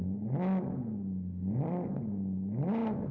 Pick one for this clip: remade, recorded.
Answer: recorded